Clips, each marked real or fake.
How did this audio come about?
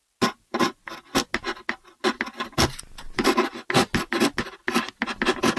real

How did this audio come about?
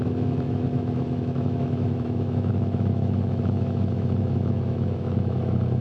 fake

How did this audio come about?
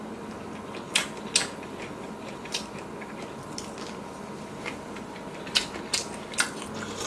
real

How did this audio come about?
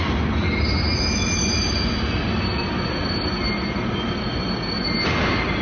real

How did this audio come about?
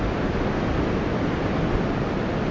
real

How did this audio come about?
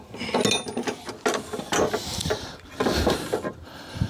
real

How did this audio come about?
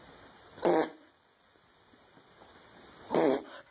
real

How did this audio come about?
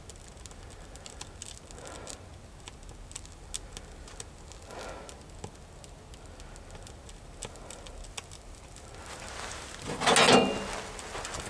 real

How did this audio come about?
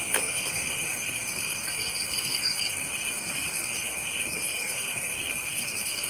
fake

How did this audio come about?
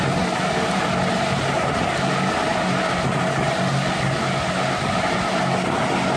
real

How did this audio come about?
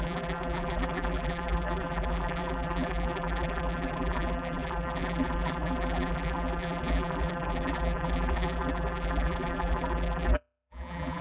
fake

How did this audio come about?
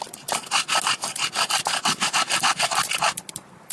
real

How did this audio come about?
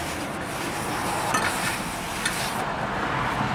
real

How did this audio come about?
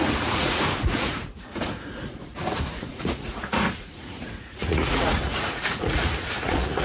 fake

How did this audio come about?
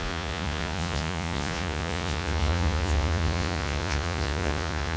fake